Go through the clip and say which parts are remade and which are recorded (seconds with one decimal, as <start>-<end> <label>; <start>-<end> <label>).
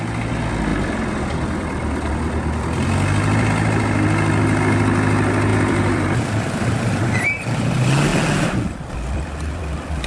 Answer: 0.0-0.7 recorded; 0.7-3.5 remade; 3.5-5.5 recorded; 5.5-7.1 remade; 7.1-10.1 recorded